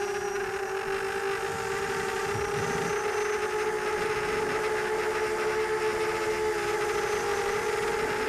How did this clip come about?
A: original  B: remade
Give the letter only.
A